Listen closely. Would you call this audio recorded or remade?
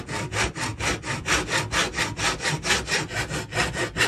recorded